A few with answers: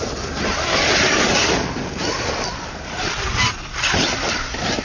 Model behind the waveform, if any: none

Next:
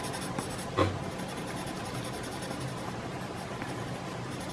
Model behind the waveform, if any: none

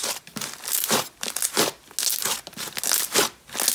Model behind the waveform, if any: none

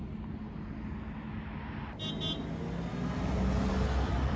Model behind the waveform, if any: none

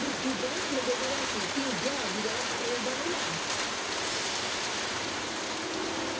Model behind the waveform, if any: none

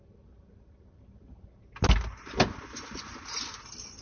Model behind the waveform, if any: none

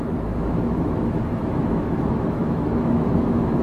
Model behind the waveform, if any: autoencoder, DAC-VAE